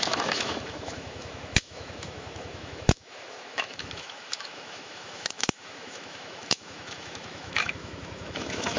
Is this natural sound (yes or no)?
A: no